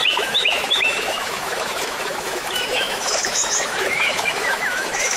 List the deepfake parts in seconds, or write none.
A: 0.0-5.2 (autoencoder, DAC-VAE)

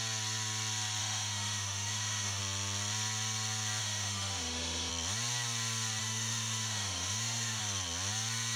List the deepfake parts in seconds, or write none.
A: 1.0-2.4 (autoencoder, DAC-VAE); 3.8-4.9; 6.0-7.6

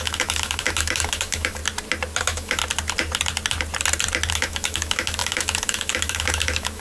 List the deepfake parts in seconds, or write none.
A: 0.0-1.6 (autoencoder, DAC-VAE); 2.2-2.6; 4.3-6.8

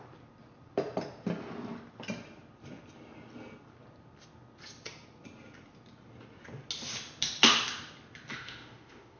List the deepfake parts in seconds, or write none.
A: 8.3-9.2 (autoencoder, DAC-VAE)

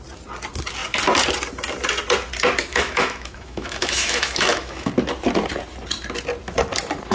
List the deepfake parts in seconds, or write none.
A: 2.7-4.9 (autoencoder, DAC-VAE)

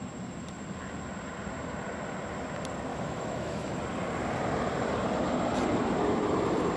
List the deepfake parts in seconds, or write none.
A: 2.9-3.8 (autoencoder, DAC-VAE)

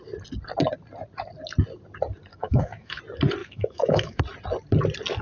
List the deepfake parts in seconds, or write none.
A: 2.3-3.0 (autoencoder, DAC-VAE); 3.4-4.2

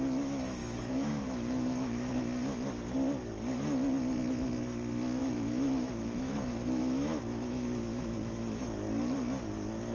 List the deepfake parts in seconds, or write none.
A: 0.6-2.1 (autoencoder, DAC-VAE); 5.2-8.6